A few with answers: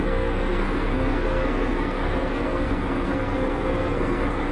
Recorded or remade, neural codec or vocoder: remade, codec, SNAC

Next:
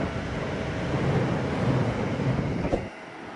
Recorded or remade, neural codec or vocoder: recorded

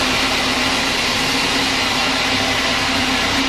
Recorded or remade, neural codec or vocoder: recorded